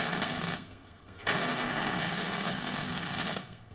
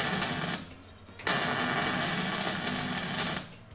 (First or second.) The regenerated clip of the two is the first